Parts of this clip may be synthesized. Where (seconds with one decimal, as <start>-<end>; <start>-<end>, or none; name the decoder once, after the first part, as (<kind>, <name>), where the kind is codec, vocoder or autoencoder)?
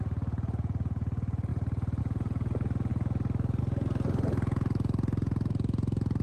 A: 2.9-3.6 (vocoder, BigVGAN v2)